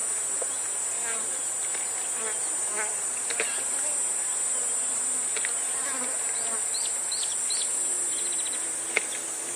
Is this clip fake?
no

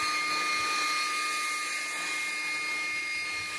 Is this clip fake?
no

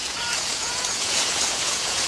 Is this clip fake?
yes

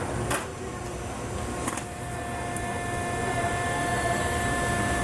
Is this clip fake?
no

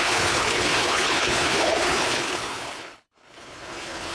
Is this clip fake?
yes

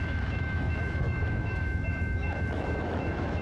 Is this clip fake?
yes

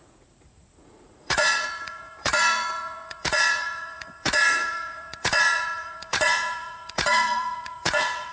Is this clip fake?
yes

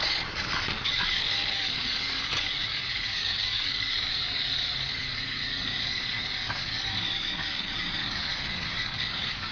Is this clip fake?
yes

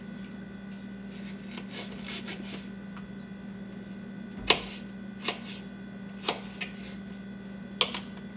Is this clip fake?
no